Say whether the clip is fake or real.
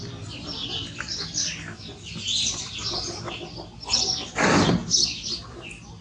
real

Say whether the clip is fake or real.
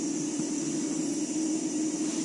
real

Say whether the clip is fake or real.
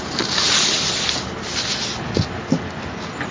real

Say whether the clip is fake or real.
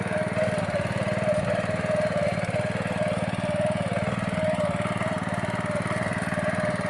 real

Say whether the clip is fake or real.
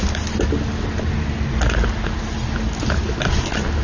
real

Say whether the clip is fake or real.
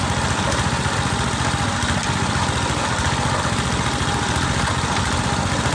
real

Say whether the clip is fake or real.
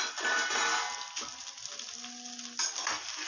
real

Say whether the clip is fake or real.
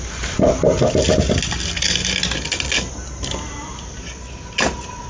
real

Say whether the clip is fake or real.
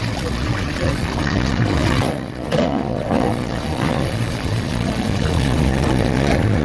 fake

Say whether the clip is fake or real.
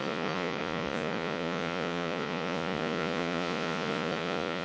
fake